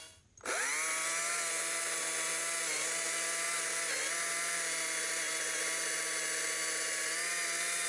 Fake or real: real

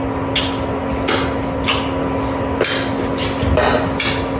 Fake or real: real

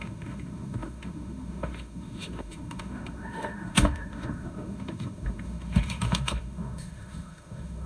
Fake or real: fake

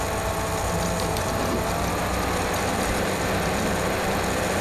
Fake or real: real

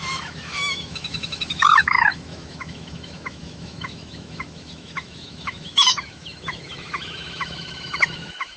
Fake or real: fake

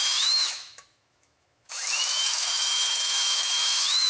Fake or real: fake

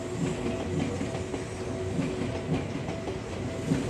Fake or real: real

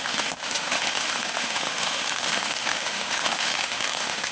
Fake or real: fake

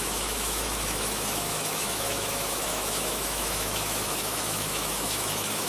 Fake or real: fake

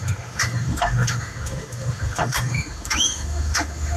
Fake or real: fake